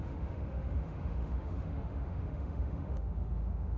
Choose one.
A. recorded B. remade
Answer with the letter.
B